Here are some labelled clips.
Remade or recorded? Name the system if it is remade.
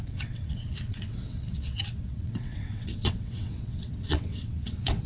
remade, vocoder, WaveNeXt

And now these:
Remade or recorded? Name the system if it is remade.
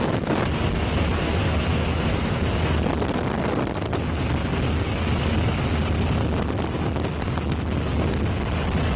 recorded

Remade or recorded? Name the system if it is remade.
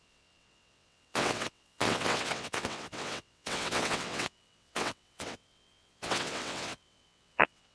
remade, vocoder, WaveNeXt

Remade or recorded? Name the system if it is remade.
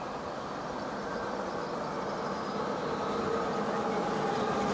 recorded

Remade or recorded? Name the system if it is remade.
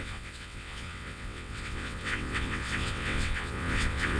remade, vocoder, WaveNeXt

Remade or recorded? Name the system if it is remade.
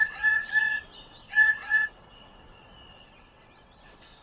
remade, vocoder, WaveNeXt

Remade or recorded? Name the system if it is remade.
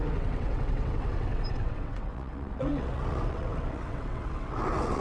remade, vocoder, WaveNeXt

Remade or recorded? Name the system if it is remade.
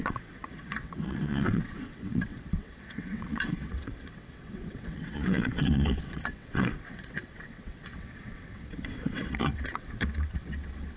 remade, vocoder, WaveNeXt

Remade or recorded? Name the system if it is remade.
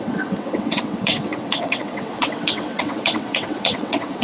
remade, vocoder, WaveNeXt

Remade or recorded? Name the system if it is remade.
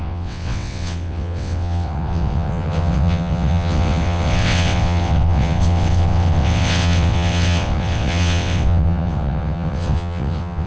remade, vocoder, WaveNeXt